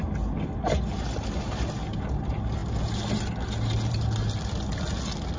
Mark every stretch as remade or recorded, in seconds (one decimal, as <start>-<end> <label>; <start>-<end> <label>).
0.0-5.4 recorded